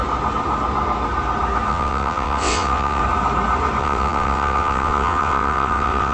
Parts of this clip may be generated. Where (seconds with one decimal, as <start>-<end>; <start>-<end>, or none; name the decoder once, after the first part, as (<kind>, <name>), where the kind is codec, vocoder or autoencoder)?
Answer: 1.7-3.0 (vocoder, WaveNeXt); 3.8-6.1